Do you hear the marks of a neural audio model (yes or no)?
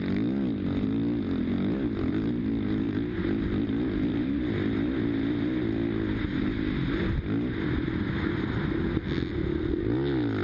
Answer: no